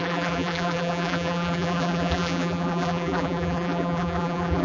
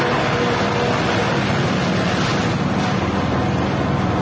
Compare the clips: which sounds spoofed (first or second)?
first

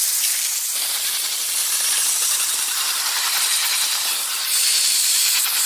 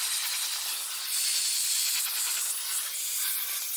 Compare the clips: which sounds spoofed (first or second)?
first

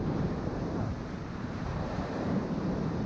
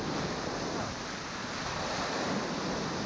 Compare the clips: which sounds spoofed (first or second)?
first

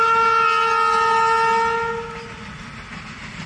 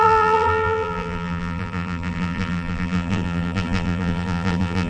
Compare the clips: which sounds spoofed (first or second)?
second